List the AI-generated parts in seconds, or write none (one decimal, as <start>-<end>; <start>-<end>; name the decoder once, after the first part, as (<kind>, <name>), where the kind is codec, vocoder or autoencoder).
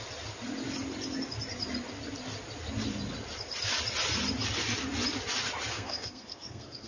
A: 5.7-6.9 (codec, SNAC)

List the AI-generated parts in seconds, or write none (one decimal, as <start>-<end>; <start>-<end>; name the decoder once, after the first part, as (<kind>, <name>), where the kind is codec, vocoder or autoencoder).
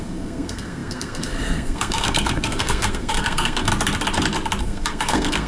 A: 0.0-3.7 (codec, SNAC); 4.6-5.5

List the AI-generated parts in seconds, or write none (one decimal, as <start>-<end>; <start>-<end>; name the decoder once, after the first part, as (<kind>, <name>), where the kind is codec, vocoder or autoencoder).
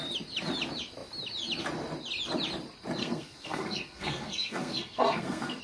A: 3.0-5.6 (codec, SNAC)